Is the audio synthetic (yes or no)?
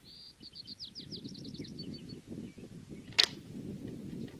no